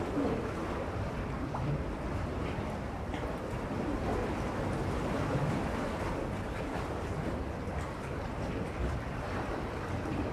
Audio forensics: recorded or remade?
recorded